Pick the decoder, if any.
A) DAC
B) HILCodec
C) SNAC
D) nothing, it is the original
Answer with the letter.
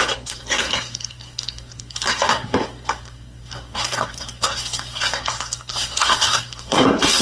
C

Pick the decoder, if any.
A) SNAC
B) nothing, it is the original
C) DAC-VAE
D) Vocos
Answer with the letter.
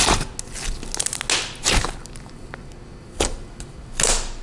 B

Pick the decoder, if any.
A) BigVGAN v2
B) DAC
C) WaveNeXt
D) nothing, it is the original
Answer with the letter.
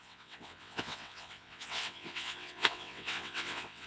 C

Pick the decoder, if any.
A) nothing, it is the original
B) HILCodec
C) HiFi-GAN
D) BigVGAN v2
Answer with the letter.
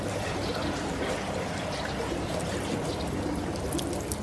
A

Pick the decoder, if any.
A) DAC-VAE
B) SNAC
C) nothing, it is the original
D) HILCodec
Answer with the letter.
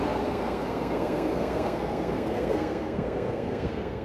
B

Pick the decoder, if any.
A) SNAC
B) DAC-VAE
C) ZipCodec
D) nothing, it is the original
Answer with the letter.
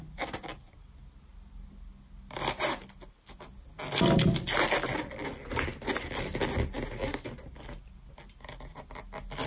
D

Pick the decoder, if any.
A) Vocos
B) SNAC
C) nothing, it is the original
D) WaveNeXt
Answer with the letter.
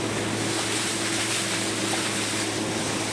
C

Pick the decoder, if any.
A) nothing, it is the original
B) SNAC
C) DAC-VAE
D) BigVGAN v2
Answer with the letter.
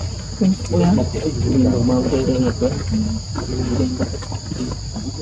A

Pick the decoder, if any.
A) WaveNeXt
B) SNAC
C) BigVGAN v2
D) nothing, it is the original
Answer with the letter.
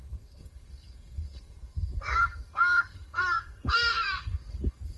B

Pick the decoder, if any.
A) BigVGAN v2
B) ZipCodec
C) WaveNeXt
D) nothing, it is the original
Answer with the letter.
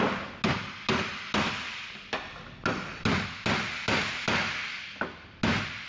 D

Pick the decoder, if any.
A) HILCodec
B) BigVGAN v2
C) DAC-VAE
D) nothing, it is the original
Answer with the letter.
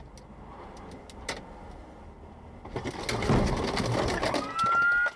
D